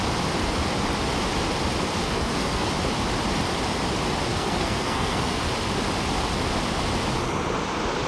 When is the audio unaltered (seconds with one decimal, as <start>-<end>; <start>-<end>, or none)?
0.0-2.0; 2.7-4.3; 5.4-8.1